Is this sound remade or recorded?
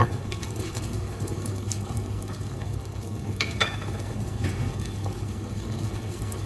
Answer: remade